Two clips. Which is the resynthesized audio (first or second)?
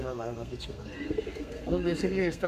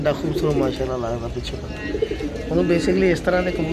first